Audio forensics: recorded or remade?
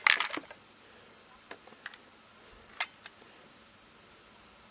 recorded